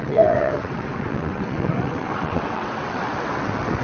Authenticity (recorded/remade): remade